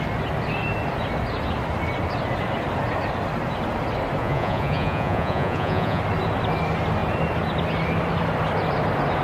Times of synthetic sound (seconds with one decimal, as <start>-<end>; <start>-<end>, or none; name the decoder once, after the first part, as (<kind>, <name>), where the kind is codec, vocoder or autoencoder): 4.2-6.0 (vocoder, Vocos)